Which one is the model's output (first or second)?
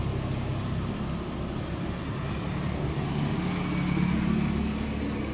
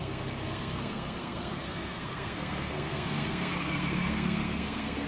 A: second